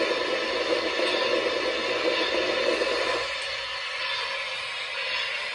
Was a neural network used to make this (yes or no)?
no